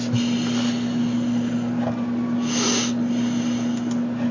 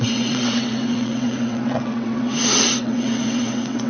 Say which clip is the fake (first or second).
second